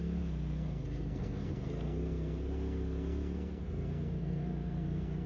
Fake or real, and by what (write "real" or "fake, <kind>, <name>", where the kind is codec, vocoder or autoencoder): fake, codec, SNAC